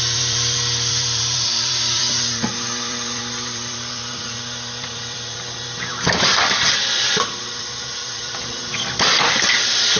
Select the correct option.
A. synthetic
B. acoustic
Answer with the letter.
A